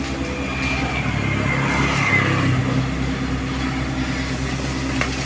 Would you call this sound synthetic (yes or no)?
no